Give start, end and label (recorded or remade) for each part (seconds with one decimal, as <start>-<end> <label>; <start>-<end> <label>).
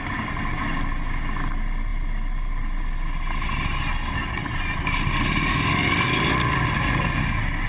0.0-7.7 recorded